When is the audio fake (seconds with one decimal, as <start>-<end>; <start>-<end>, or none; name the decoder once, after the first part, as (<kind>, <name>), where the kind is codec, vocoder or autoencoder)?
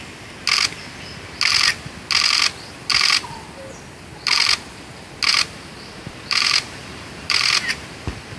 2.9-3.6 (vocoder, BigVGAN v2); 5.3-8.4